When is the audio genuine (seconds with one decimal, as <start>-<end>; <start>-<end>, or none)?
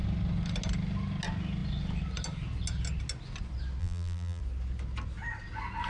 0.0-3.8; 4.4-5.9